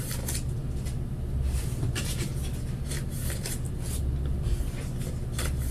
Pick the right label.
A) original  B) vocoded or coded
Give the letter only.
B